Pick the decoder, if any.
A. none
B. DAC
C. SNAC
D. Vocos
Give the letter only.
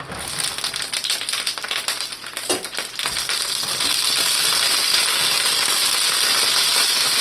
A